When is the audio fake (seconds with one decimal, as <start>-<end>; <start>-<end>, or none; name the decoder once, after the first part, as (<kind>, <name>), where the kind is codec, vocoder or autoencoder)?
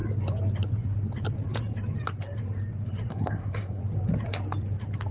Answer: 3.1-3.8 (codec, SNAC)